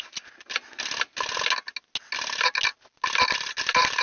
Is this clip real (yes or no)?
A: yes